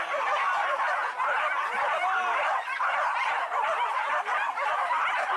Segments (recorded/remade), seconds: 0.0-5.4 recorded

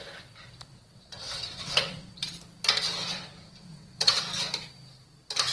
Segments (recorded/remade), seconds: 0.0-0.7 recorded; 0.7-2.3 remade; 2.3-3.1 recorded; 3.1-4.2 remade; 4.2-5.5 recorded

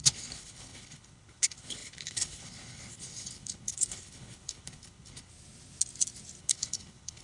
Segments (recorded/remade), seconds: 0.0-5.3 remade; 5.3-6.4 recorded; 6.4-7.2 remade

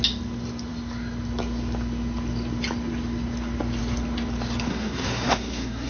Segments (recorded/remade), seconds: 0.0-4.7 recorded; 4.7-5.9 remade

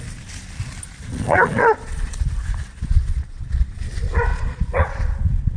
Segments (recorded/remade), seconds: 0.0-1.1 recorded; 1.1-2.2 remade; 2.2-2.7 recorded; 2.7-3.9 remade; 3.9-4.3 recorded; 4.3-5.6 remade